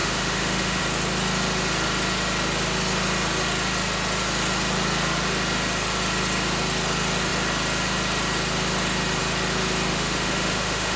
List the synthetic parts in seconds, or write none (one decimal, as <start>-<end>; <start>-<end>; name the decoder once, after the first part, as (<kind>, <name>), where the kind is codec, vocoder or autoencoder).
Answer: 0.0-0.8 (autoencoder, DAC-VAE); 9.9-11.0